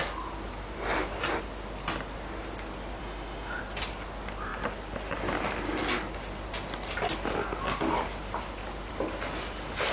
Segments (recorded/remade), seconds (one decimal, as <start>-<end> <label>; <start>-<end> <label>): 0.0-3.0 recorded; 3.0-3.6 remade; 3.6-9.9 recorded